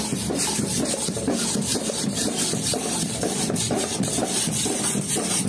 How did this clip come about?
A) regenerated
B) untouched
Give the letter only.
A